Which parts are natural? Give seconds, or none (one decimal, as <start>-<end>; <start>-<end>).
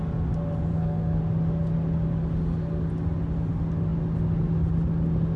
0.0-0.7; 1.2-5.4